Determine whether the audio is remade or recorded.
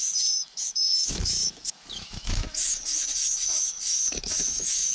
remade